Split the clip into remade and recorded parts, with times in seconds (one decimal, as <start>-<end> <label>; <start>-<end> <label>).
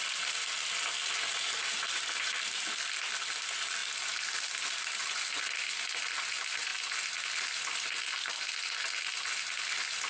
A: 0.0-10.1 recorded